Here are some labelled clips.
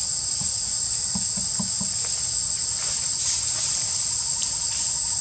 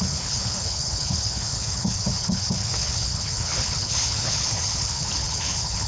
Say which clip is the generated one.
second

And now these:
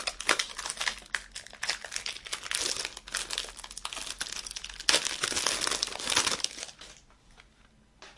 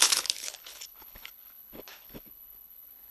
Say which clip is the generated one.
second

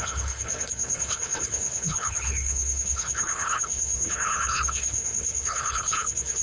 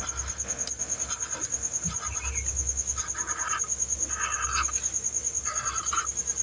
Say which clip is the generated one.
first